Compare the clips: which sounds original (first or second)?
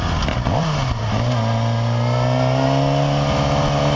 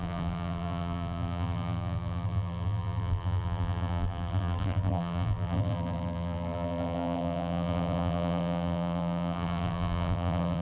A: first